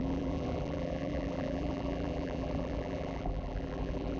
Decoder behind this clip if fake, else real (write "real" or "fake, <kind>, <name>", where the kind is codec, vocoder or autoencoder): fake, vocoder, BigVGAN v2